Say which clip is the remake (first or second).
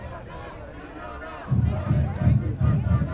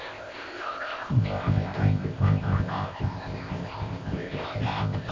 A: second